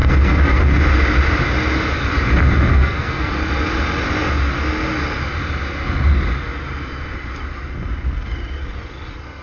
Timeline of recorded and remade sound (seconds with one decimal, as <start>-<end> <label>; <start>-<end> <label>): 0.0-0.7 remade; 0.7-2.7 recorded; 2.7-3.3 remade; 3.3-9.4 recorded